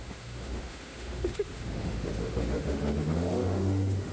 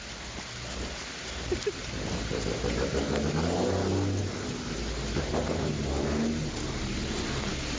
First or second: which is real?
second